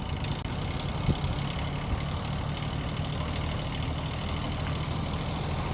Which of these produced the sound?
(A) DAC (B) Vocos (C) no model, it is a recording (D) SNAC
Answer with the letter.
C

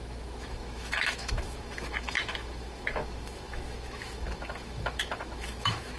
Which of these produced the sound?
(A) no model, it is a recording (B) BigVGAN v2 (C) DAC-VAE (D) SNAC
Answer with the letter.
C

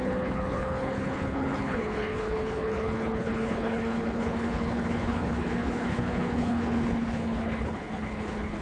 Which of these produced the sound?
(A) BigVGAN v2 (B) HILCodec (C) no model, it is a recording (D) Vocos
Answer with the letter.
B